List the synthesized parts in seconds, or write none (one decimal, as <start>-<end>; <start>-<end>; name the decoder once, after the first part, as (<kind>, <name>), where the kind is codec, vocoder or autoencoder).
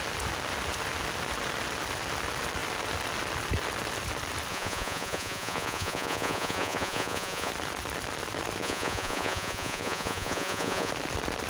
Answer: 4.5-7.5 (vocoder, Vocos); 8.6-10.9